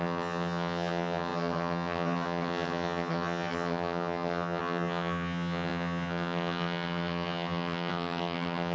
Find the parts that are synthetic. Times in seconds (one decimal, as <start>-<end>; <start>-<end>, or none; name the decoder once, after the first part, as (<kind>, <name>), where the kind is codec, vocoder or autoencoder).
0.0-8.7 (vocoder, HiFi-GAN)